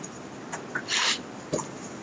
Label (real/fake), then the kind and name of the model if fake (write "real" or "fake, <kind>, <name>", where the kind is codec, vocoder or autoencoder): real